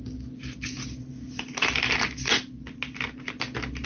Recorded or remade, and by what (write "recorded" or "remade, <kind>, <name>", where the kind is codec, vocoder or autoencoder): recorded